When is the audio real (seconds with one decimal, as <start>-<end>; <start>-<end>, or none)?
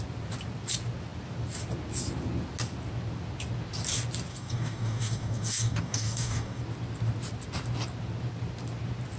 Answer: 0.0-4.3; 6.6-9.2